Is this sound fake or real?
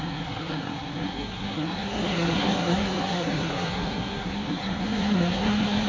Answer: fake